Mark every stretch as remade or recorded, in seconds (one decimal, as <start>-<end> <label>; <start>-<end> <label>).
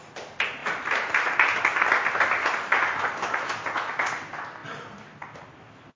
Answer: 0.0-6.0 recorded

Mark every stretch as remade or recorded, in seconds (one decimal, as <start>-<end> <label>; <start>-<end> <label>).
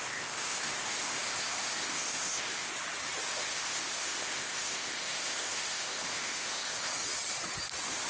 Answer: 0.0-2.7 remade; 2.7-3.3 recorded; 3.3-6.9 remade; 6.9-8.1 recorded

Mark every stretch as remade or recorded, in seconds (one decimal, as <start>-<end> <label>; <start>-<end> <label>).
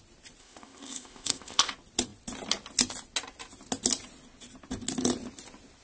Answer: 0.0-0.4 recorded; 0.4-1.7 remade; 1.7-5.8 recorded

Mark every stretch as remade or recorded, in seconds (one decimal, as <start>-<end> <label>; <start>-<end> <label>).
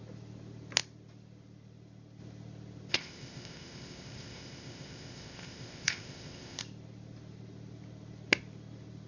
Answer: 0.0-2.9 recorded; 2.9-6.6 remade; 6.6-9.1 recorded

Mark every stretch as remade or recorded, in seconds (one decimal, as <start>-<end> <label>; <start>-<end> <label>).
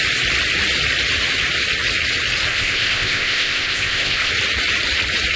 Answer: 0.0-2.5 recorded; 2.5-4.3 remade; 4.3-5.4 recorded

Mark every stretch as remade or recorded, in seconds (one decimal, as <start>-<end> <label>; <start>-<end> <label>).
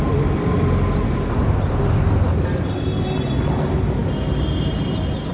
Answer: 0.0-5.3 recorded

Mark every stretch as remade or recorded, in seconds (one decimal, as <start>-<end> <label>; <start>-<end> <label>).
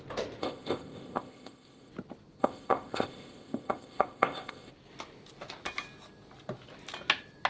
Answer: 0.0-0.4 recorded; 0.4-1.9 remade; 1.9-2.4 recorded; 2.4-4.7 remade; 4.7-7.5 recorded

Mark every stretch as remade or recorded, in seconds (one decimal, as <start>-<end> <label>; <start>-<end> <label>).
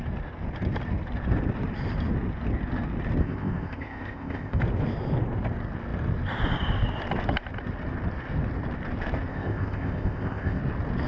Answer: 0.0-3.2 recorded; 3.2-4.6 remade; 4.6-9.3 recorded; 9.3-10.6 remade; 10.6-11.1 recorded